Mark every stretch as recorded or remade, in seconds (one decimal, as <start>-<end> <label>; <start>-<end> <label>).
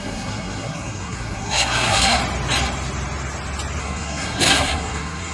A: 0.0-2.2 remade; 2.2-3.8 recorded; 3.8-5.3 remade